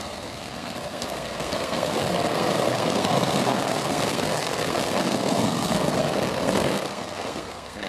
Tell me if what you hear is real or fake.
fake